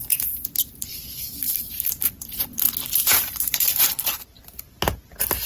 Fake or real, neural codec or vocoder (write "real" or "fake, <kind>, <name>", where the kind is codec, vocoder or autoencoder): fake, vocoder, BigVGAN v2